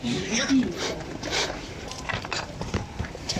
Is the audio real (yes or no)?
no